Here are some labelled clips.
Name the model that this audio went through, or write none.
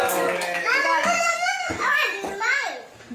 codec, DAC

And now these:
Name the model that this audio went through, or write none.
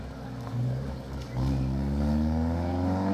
codec, DAC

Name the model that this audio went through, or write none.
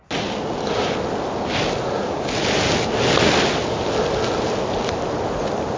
none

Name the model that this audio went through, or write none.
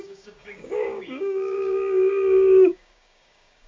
codec, DAC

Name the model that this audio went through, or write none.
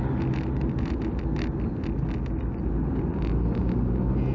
none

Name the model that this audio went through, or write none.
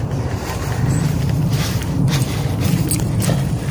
none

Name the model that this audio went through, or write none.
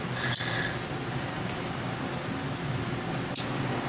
none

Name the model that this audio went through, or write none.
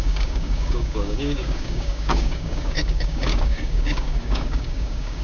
codec, DAC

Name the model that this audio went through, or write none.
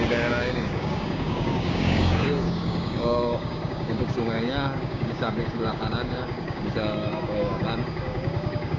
codec, DAC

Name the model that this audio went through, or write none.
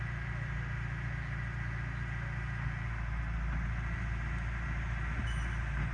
none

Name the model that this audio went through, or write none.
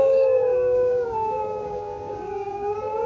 codec, DAC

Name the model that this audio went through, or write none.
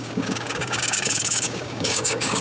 codec, DAC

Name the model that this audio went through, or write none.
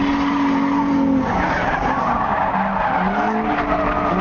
none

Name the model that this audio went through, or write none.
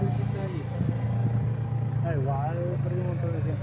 none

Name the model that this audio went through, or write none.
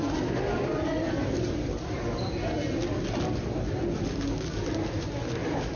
none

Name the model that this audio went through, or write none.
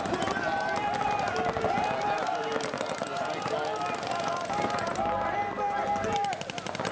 none